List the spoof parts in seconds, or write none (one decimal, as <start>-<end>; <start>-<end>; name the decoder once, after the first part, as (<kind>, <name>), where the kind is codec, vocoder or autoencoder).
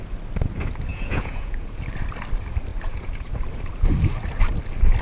0.9-1.8 (vocoder, Vocos); 2.7-3.4